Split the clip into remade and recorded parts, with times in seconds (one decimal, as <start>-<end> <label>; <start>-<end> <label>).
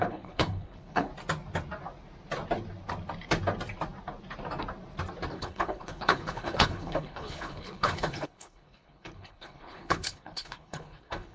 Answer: 0.0-1.1 remade; 1.1-5.3 recorded; 5.3-11.3 remade